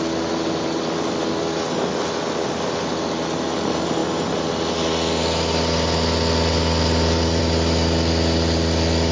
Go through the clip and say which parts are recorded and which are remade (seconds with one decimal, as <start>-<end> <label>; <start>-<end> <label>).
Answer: 0.0-9.1 recorded